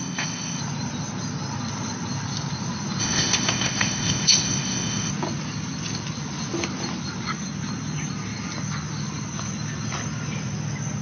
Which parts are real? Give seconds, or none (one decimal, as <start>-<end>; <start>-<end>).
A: 0.6-3.0; 5.1-11.0